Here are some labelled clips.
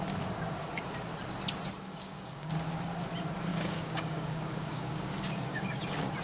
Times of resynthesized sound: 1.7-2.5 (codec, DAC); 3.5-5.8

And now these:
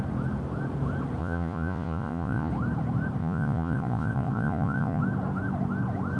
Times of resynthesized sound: 1.2-2.5 (vocoder, Vocos); 3.2-5.0